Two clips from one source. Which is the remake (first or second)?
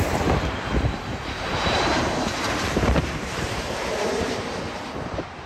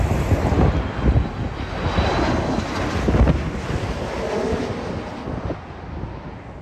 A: first